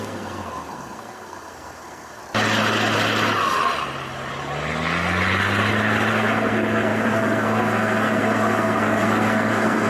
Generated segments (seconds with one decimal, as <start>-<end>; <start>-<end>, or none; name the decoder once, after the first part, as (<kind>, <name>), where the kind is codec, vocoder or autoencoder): 0.0-2.2 (codec, SNAC); 6.1-9.9

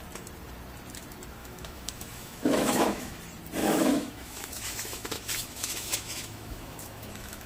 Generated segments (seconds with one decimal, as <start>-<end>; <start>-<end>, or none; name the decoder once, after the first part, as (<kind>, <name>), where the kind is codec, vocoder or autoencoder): 1.4-3.2 (autoencoder, DAC-VAE); 3.6-7.5